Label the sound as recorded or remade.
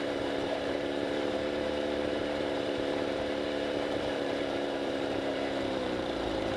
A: remade